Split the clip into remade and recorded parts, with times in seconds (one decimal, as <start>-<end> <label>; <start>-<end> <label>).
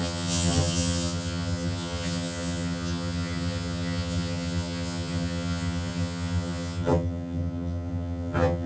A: 0.0-8.7 remade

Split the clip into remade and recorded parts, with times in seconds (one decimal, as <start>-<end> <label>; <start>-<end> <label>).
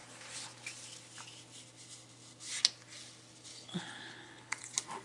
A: 0.0-3.5 recorded; 3.5-4.6 remade; 4.6-5.0 recorded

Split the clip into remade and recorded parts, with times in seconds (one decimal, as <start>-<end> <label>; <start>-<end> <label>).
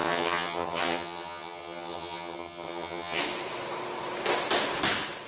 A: 0.0-3.2 remade; 3.2-5.3 recorded